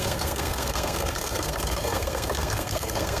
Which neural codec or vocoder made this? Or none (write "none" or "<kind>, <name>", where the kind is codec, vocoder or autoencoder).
codec, SNAC